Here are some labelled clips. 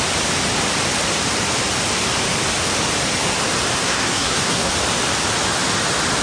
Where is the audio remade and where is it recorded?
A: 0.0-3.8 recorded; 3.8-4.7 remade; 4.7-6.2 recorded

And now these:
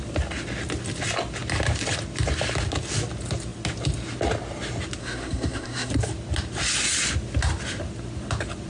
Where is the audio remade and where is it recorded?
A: 0.0-5.0 recorded; 5.0-5.9 remade; 5.9-8.7 recorded

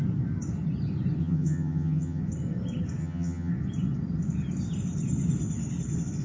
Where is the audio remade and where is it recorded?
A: 0.0-1.2 recorded; 1.2-2.2 remade; 2.2-3.0 recorded; 3.0-3.5 remade; 3.5-6.2 recorded

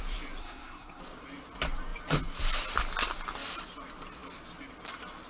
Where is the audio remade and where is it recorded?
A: 0.0-0.4 recorded; 0.4-1.0 remade; 1.0-5.3 recorded

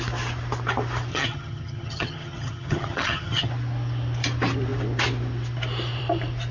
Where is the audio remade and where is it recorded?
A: 0.0-1.1 recorded; 1.1-3.5 remade; 3.5-6.5 recorded

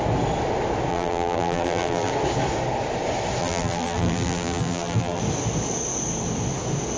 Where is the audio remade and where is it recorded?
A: 0.0-0.9 recorded; 0.9-2.1 remade; 2.1-3.4 recorded; 3.4-5.2 remade; 5.2-7.0 recorded